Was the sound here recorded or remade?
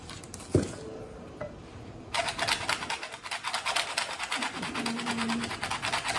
recorded